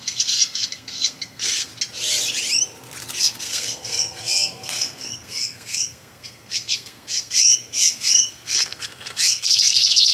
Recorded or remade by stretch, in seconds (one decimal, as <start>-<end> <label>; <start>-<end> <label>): 0.0-1.7 remade; 1.7-3.2 recorded; 3.2-10.1 remade